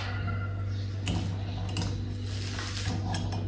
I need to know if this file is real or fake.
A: real